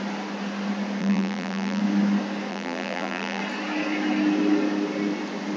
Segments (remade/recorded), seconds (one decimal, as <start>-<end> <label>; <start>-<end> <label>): 0.0-1.0 recorded; 1.0-1.8 remade; 1.8-2.5 recorded; 2.5-3.4 remade; 3.4-5.6 recorded